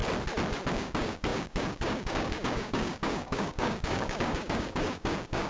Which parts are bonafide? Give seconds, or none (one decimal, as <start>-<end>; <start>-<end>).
0.0-0.7